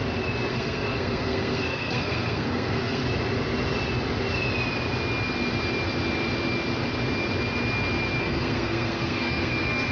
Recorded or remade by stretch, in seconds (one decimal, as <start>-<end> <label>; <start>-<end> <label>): 0.0-0.5 recorded; 0.5-3.0 remade; 3.0-8.2 recorded; 8.2-9.9 remade